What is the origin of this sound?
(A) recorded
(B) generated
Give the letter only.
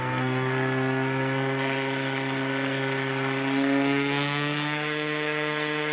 B